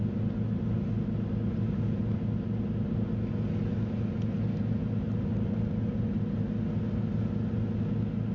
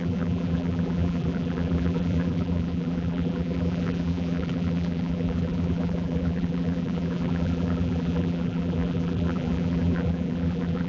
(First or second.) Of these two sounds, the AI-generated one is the second